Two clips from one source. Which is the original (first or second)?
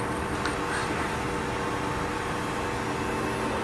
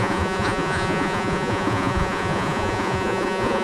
first